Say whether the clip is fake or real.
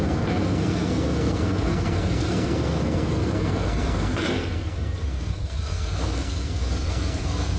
fake